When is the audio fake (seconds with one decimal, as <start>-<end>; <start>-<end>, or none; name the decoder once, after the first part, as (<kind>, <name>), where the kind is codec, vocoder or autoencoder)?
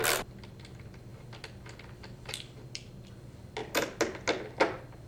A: none